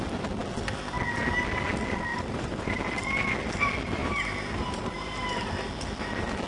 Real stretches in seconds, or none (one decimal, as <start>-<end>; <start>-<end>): 0.0-2.1; 2.7-4.0; 5.4-6.5